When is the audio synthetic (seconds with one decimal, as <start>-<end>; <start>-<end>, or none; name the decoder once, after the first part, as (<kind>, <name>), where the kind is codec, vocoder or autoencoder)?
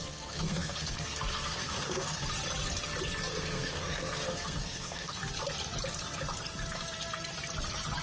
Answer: 0.0-2.2 (codec, SNAC); 3.3-5.2